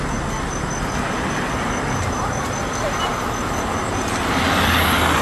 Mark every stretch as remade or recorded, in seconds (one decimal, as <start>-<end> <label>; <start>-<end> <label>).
0.0-5.2 recorded